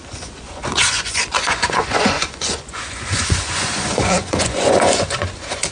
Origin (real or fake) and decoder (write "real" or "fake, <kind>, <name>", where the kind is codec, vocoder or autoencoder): fake, vocoder, Vocos